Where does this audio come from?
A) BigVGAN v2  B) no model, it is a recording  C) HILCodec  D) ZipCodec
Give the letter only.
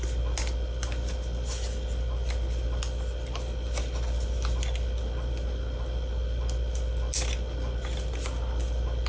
B